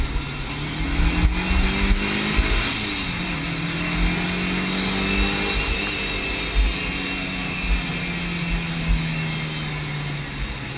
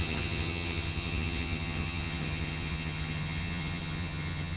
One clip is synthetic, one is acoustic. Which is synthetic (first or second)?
second